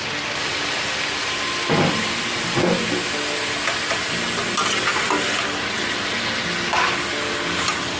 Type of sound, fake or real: real